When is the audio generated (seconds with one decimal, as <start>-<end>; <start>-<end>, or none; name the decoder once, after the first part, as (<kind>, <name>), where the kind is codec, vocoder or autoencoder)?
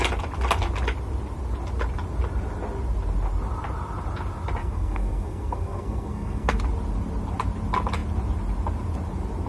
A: 4.6-6.6 (codec, SNAC)